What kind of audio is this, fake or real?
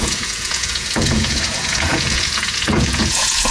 fake